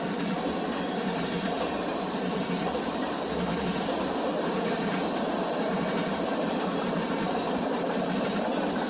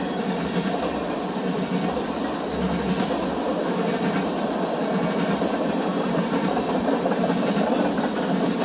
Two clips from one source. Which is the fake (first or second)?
first